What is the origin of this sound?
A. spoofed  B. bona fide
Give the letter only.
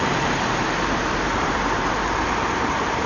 A